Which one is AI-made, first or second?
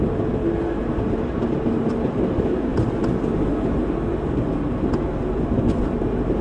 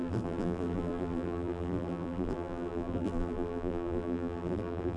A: second